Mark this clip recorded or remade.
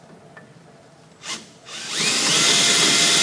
recorded